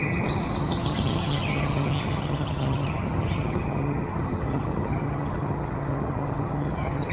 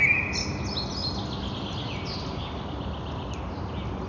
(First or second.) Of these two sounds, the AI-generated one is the first